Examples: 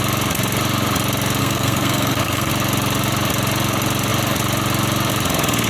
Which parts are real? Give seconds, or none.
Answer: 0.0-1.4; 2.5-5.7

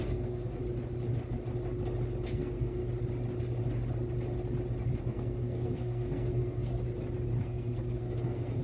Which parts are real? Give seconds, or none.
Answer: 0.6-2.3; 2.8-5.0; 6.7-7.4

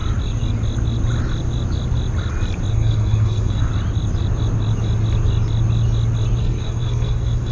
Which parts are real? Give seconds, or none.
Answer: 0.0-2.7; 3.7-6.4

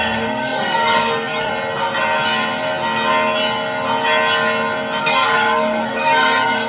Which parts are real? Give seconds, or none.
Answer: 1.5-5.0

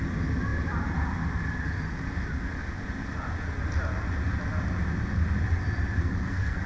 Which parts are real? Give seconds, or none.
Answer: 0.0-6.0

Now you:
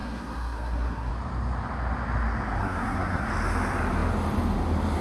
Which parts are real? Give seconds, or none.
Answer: 1.1-2.6; 3.3-5.0